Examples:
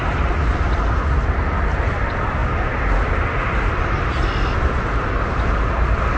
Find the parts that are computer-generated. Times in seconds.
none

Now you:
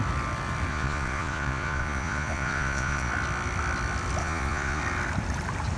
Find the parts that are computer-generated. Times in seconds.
0.7-3.1 (vocoder, Vocos); 4.2-4.8

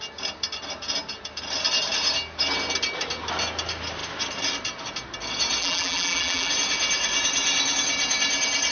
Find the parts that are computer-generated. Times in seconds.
5.6-6.5 (vocoder, BigVGAN v2)

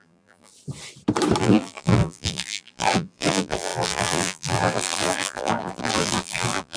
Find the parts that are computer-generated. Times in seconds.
0.0-0.5 (vocoder, BigVGAN v2); 1.4-6.8

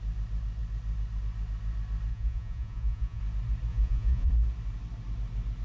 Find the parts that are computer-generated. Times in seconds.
2.1-3.2 (vocoder, Vocos); 3.7-4.3